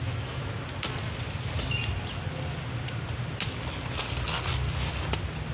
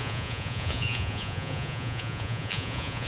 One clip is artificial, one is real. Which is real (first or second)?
first